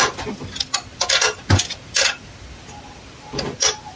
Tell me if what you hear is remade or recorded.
recorded